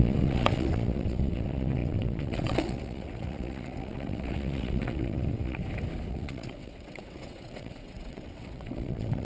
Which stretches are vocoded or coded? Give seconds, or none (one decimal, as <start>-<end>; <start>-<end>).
0.0-5.6; 6.1-9.2